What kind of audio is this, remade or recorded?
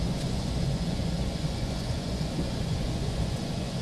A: remade